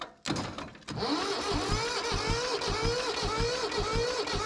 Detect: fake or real real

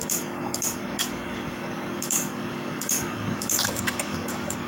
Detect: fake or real fake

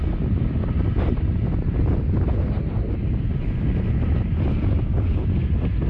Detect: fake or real real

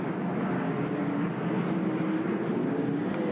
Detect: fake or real real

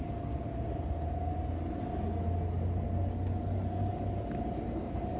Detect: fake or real real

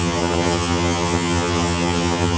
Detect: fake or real fake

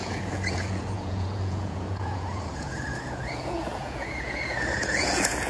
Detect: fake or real fake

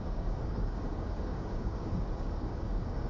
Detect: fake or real fake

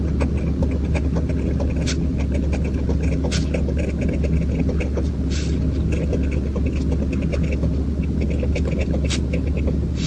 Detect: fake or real real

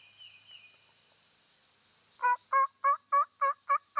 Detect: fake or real real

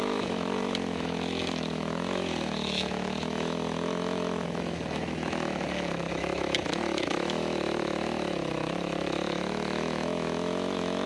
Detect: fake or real fake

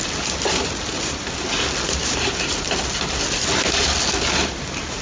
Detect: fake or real real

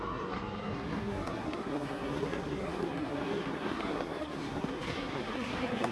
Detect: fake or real fake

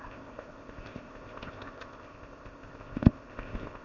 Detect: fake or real fake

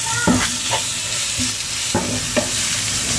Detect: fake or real real